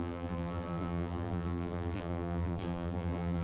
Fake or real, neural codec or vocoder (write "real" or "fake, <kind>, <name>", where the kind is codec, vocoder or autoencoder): fake, vocoder, BigVGAN v2